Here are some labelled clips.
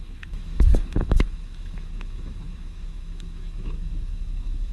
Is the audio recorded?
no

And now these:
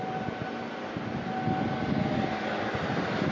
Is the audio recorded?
yes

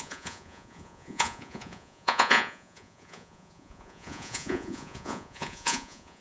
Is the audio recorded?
no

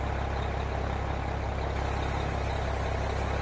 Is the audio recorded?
yes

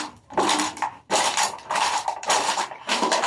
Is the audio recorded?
no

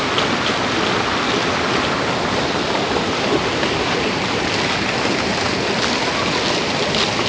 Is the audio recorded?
yes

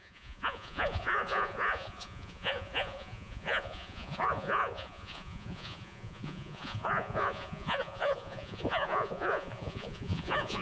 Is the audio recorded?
no